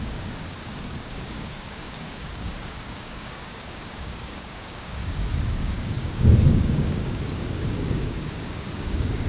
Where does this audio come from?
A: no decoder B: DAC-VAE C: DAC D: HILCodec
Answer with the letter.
C